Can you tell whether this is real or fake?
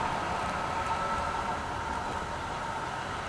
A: real